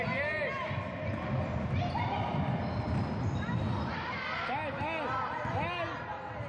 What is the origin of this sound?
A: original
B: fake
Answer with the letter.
A